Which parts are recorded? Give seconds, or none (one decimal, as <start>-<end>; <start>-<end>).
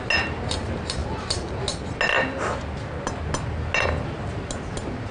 0.0-5.1